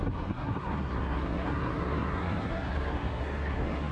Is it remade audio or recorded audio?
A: remade